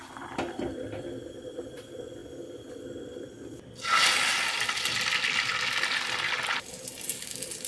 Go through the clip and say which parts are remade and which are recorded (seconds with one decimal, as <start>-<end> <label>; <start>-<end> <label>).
0.0-7.7 recorded